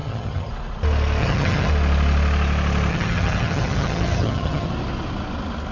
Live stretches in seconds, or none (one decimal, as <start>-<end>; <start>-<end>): 0.5-1.2; 1.7-2.9; 4.7-5.7